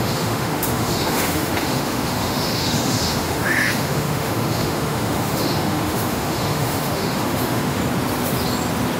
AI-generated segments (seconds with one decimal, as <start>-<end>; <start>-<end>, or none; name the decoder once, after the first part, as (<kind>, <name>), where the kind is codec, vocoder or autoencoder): 0.0-7.8 (autoencoder, DAC-VAE)